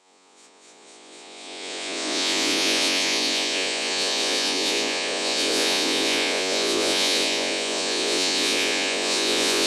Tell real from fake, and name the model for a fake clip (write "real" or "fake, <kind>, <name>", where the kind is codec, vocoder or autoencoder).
fake, vocoder, Vocos